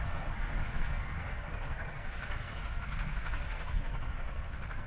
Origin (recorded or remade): remade